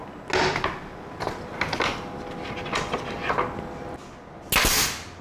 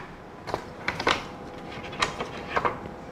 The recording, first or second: first